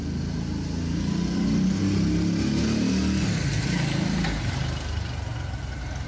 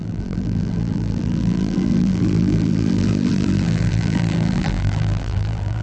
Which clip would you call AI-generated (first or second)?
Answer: second